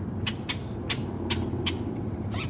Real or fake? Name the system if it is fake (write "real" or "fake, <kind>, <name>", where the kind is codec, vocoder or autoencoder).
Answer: real